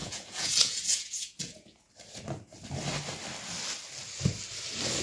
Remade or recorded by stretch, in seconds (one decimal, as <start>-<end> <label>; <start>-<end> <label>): 0.0-1.9 remade; 1.9-5.0 recorded